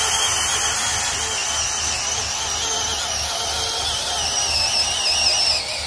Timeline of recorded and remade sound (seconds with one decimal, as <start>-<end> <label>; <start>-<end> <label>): 0.0-5.9 recorded